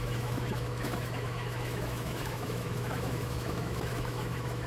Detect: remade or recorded remade